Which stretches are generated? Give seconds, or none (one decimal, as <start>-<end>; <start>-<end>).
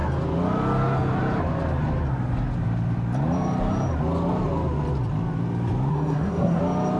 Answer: 5.9-6.6